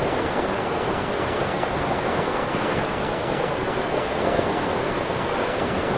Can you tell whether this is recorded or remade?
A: remade